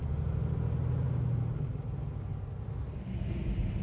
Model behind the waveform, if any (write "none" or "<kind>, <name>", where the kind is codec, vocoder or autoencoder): none